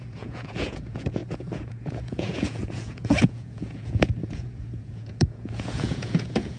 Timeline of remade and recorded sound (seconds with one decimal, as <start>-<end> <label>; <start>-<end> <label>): 0.0-6.6 remade